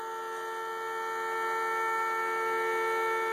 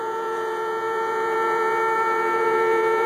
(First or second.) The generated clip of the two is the second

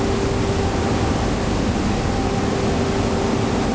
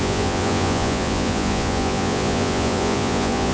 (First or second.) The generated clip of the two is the second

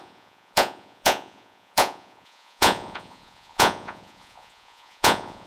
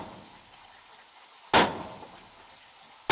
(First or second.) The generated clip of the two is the first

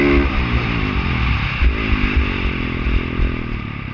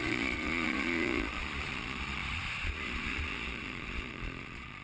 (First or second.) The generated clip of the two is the second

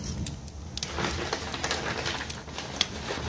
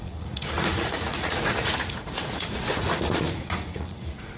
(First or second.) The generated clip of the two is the second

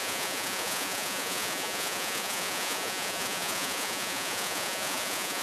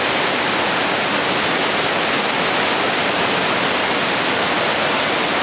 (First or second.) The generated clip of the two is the first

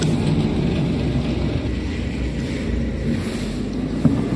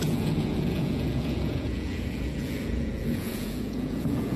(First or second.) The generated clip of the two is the second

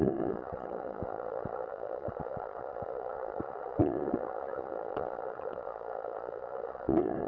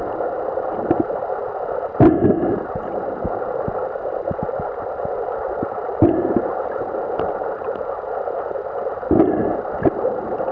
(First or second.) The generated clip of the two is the first